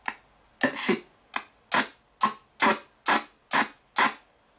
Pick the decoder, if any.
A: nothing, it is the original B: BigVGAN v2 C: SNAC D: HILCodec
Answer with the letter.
A